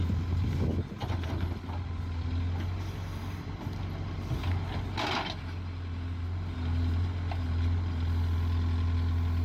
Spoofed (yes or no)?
no